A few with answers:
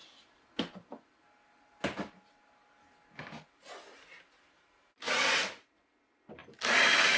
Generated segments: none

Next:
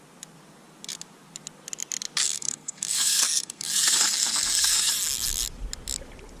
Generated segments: 2.2-4.9 (codec, SNAC)

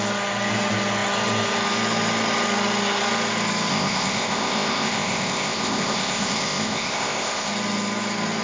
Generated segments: 3.7-7.5 (codec, ZipCodec)

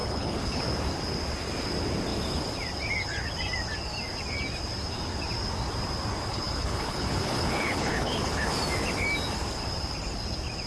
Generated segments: 0.0-0.6 (codec, HILCodec); 6.3-8.5

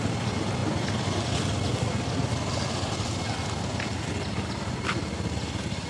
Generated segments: none

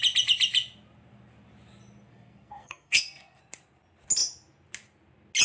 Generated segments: 2.1-3.4 (codec, SNAC)